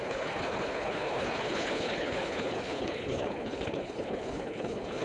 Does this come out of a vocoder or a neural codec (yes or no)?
yes